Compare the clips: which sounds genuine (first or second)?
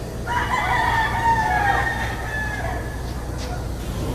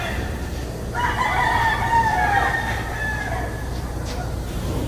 first